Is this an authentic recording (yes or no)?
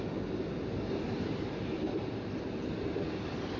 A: yes